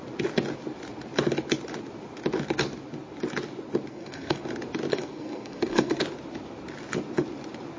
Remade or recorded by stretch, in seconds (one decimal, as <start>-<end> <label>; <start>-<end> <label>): 0.0-3.9 recorded; 3.9-4.4 remade; 4.4-4.9 recorded; 4.9-6.0 remade; 6.0-7.8 recorded